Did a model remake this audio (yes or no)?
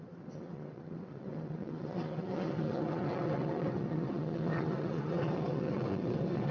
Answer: yes